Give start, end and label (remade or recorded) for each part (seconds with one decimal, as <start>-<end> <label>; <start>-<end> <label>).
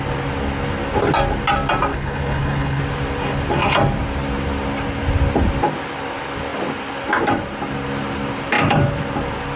0.0-1.9 recorded; 1.9-2.8 remade; 2.8-9.6 recorded